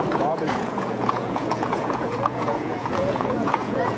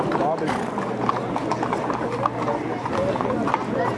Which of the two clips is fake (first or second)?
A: first